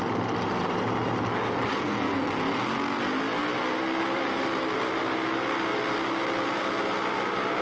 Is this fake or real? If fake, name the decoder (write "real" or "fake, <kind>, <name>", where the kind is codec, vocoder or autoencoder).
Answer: real